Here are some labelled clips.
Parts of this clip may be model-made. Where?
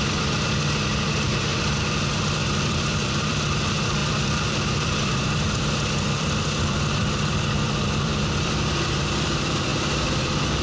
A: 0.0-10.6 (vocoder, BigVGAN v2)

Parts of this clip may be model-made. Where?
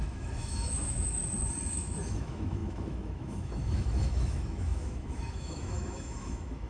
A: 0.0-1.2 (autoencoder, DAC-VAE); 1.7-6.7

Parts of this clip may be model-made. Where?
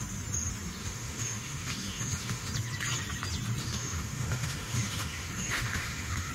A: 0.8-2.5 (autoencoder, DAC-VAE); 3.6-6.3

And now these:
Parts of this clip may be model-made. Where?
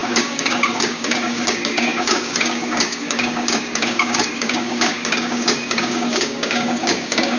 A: 0.0-7.4 (codec, DAC)